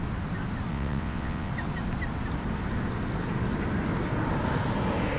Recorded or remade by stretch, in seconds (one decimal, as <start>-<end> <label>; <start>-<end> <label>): 0.0-0.7 recorded; 0.7-1.5 remade; 1.5-5.2 recorded